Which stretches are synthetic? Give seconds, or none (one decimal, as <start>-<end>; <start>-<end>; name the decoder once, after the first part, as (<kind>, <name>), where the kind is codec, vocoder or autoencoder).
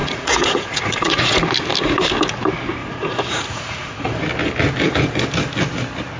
0.0-1.4 (vocoder, Vocos); 2.8-4.2